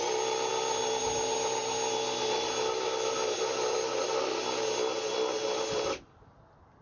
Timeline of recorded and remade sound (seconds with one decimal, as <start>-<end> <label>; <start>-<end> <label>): 0.0-6.8 recorded